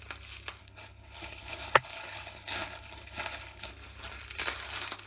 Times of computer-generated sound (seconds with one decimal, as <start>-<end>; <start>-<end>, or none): 0.6-3.7